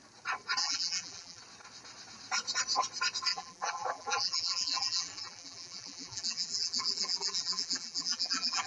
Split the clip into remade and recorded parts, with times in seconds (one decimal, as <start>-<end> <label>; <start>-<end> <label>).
0.0-0.6 recorded; 0.6-1.4 remade; 1.4-3.3 recorded; 3.3-8.7 remade